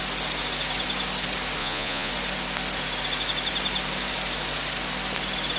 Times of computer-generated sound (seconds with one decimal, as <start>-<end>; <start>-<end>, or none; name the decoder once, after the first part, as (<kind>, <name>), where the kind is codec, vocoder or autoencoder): 1.6-2.1 (vocoder, Vocos)